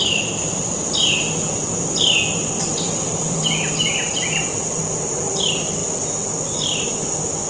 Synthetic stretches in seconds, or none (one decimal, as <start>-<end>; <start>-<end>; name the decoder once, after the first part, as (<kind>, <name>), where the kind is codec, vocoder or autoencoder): 2.7-4.8 (vocoder, BigVGAN v2)